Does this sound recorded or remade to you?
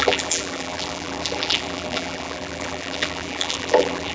remade